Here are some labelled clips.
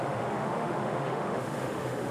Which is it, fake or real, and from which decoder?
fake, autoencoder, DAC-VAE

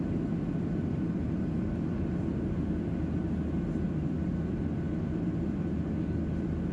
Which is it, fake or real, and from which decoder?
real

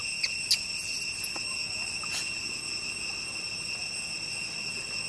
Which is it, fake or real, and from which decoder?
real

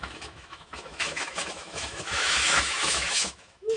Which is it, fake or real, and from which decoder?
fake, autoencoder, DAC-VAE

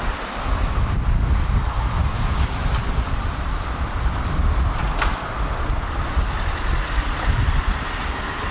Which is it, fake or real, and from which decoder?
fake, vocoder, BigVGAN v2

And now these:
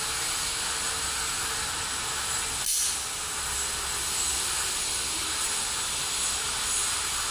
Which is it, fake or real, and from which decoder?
real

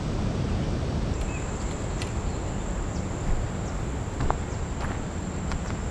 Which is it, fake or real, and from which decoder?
real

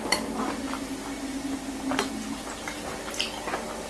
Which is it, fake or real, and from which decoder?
real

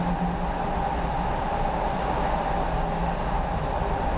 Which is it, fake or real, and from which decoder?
real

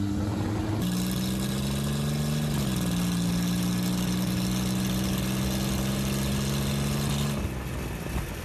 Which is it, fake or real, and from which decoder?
real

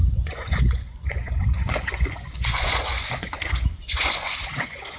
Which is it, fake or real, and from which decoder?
fake, vocoder, Vocos